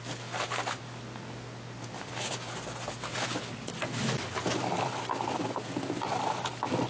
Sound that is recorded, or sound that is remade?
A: recorded